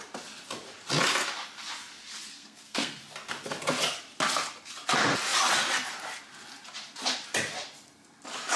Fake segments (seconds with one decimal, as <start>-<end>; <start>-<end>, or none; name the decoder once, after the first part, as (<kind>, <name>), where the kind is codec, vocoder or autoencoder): 2.3-3.0 (codec, SNAC)